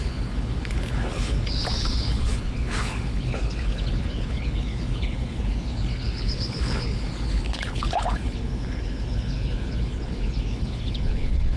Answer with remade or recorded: remade